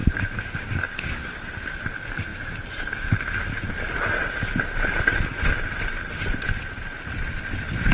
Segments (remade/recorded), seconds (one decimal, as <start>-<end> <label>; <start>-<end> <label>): 0.0-1.3 remade; 1.3-7.9 recorded